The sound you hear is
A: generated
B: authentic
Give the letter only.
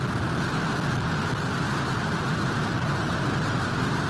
B